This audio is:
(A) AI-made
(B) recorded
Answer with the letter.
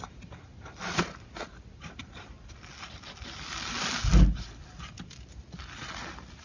B